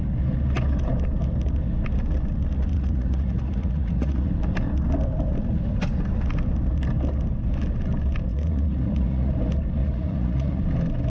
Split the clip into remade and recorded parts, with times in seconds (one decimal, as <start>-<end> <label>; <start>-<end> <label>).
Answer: 0.0-2.7 recorded; 2.7-4.3 remade; 4.3-8.3 recorded; 8.3-9.3 remade; 9.3-9.8 recorded; 9.8-10.6 remade; 10.6-11.1 recorded